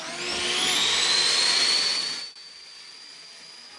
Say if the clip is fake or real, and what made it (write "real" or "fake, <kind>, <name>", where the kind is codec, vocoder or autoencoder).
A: real